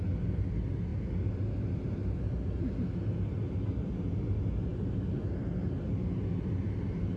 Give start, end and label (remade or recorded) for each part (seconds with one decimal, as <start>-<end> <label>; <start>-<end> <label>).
0.0-7.2 recorded